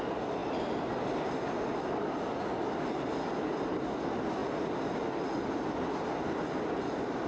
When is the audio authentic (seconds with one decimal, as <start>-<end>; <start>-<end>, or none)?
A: 0.0-7.3